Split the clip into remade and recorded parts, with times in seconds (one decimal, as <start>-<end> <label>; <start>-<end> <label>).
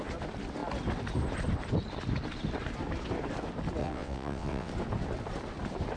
0.0-3.8 recorded; 3.8-4.7 remade; 4.7-6.0 recorded